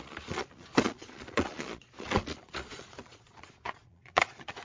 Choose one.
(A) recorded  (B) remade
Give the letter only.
B